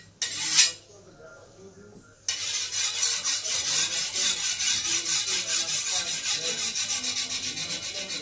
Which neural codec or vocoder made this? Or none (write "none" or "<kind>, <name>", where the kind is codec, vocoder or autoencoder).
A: none